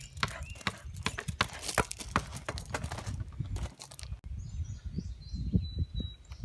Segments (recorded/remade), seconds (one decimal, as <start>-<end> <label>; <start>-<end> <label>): 0.0-6.4 recorded